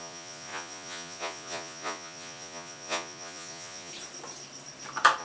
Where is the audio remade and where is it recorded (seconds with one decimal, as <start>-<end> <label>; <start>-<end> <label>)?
0.0-3.9 remade; 3.9-5.2 recorded

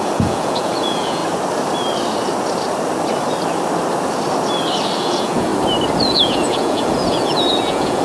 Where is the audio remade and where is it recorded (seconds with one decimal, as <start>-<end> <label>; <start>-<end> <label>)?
0.0-1.2 remade; 1.2-5.0 recorded; 5.0-5.5 remade; 5.5-6.0 recorded; 6.0-8.0 remade

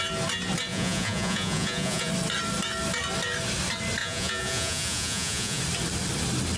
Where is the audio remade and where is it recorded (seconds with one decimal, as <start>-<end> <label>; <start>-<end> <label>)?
0.0-0.7 recorded; 0.7-2.1 remade; 2.1-4.0 recorded; 4.0-5.6 remade; 5.6-6.6 recorded

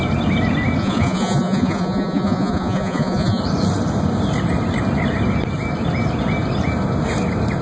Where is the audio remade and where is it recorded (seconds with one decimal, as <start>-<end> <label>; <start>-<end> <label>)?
0.0-0.8 recorded; 0.8-3.4 remade; 3.4-7.6 recorded

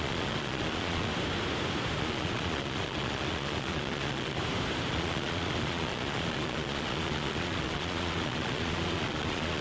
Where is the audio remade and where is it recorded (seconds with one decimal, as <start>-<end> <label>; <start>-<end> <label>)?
0.0-1.1 remade; 1.1-2.0 recorded; 2.0-4.4 remade; 4.4-4.9 recorded; 4.9-9.6 remade

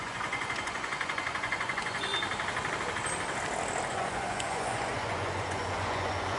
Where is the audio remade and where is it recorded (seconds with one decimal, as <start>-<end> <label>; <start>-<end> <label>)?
0.0-2.1 remade; 2.1-3.9 recorded; 3.9-6.4 remade

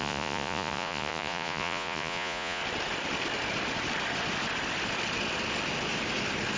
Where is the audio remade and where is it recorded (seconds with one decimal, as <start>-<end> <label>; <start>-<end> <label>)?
0.0-2.6 remade; 2.6-6.6 recorded

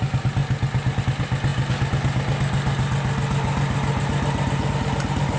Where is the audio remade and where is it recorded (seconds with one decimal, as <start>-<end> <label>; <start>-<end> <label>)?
0.0-5.4 recorded